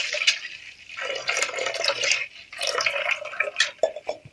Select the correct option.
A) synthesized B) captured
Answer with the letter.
B